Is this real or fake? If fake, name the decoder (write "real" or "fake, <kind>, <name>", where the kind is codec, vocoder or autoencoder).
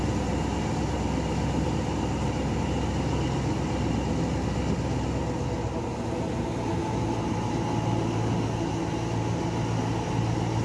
real